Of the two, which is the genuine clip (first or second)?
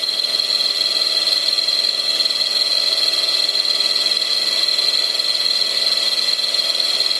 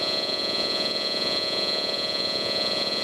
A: first